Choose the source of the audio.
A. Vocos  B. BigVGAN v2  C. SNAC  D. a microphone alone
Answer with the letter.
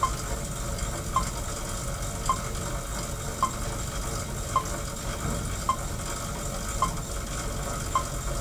D